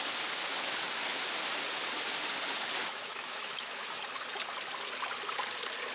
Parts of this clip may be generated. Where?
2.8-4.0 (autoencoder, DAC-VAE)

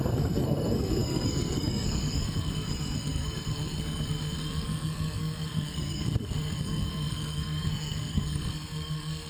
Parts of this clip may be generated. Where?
0.0-9.3 (codec, SNAC)